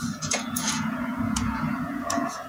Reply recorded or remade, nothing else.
remade